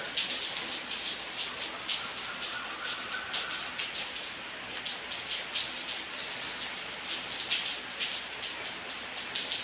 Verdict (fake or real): real